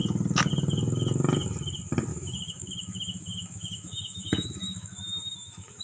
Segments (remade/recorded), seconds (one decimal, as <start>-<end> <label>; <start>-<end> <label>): 0.0-2.1 recorded; 2.1-5.8 remade